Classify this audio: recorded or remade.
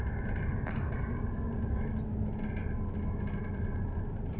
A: recorded